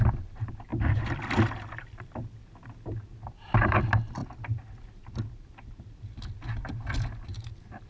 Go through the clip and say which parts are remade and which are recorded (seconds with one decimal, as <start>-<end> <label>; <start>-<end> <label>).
0.0-4.2 remade; 4.2-5.8 recorded; 5.8-7.9 remade